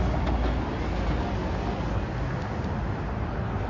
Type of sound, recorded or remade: recorded